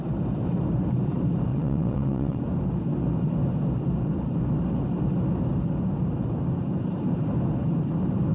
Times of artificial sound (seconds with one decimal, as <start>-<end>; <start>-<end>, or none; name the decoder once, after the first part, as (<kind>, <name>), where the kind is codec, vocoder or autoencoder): 1.5-2.4 (vocoder, WaveNeXt)